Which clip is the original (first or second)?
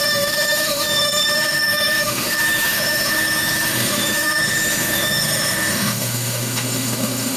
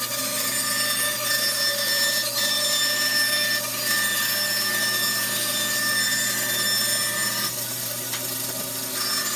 second